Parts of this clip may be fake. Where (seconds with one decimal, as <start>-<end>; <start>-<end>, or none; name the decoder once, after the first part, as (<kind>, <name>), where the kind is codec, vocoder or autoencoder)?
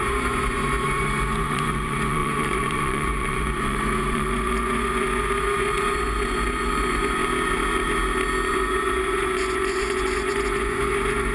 0.0-7.2 (vocoder, Vocos); 8.5-11.3